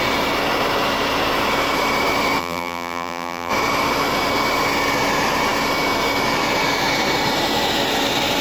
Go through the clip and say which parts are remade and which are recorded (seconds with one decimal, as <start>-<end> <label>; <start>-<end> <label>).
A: 0.0-2.4 recorded; 2.4-3.5 remade; 3.5-8.4 recorded